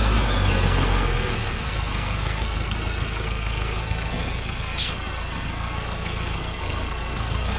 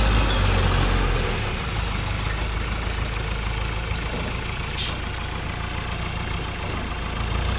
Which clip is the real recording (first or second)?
second